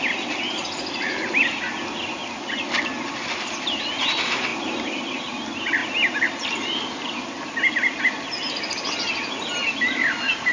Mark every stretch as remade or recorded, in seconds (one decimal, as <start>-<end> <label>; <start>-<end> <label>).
0.0-10.5 recorded